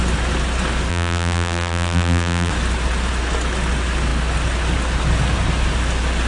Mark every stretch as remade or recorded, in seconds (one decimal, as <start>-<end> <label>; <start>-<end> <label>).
0.0-0.9 recorded; 0.9-2.5 remade; 2.5-6.3 recorded